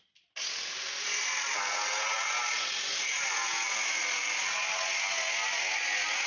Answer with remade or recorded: recorded